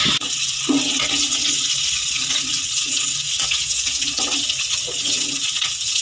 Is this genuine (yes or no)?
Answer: no